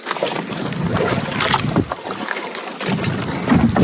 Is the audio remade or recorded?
recorded